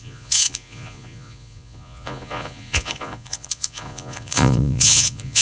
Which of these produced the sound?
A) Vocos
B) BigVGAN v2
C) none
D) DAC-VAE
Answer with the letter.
A